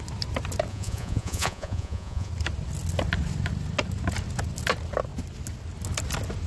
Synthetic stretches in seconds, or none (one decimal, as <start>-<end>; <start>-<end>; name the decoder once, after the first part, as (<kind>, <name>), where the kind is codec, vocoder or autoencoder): 0.7-2.3 (vocoder, Vocos)